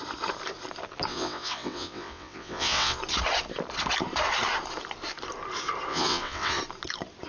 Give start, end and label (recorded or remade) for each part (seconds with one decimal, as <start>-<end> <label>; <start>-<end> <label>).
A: 0.0-1.1 recorded; 1.1-3.0 remade; 3.0-5.9 recorded; 5.9-6.6 remade; 6.6-7.3 recorded